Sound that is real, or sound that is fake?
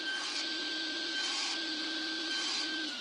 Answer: real